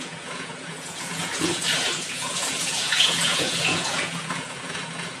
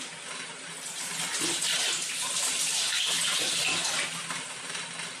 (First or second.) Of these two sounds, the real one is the second